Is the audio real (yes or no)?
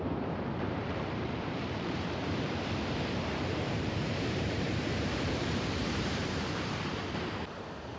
no